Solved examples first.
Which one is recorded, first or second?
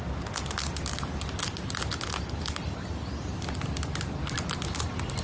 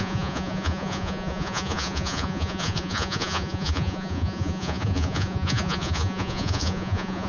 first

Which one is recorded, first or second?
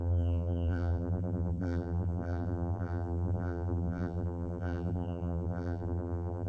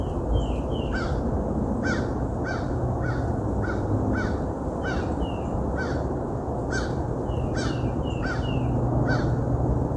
second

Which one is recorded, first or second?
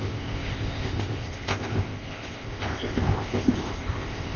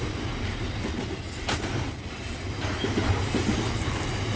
second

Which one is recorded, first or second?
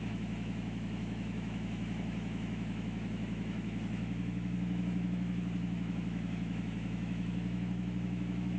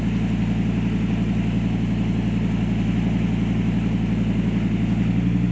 second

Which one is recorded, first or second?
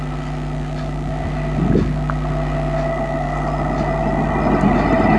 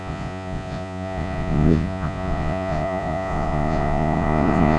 first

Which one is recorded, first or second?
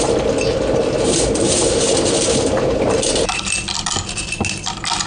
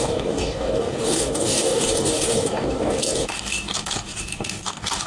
first